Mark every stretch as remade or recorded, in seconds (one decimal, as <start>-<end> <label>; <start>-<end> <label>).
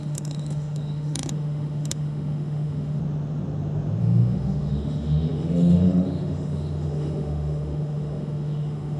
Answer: 0.0-3.0 remade; 3.0-4.0 recorded; 4.0-9.0 remade